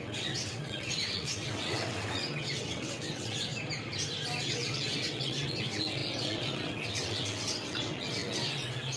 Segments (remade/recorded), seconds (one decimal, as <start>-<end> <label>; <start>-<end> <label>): 0.0-3.5 remade; 3.5-4.4 recorded; 4.4-9.0 remade